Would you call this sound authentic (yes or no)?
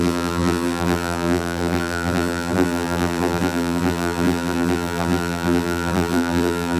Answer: no